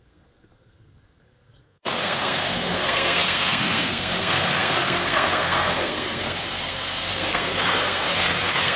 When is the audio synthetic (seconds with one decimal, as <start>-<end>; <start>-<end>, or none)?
0.0-8.8